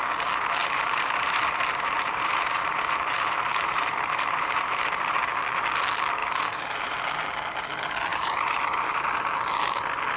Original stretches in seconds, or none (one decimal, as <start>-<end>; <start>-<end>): 0.0-0.6; 5.4-6.2; 7.0-8.1; 9.0-10.2